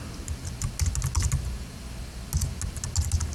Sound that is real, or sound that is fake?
real